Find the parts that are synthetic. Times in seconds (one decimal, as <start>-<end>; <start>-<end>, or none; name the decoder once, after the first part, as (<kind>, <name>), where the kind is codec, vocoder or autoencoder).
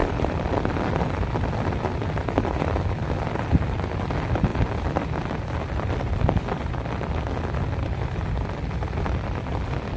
0.0-0.8 (vocoder, BigVGAN v2)